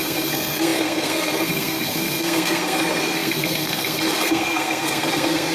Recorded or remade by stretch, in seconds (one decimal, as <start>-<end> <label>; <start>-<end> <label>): 0.0-5.5 remade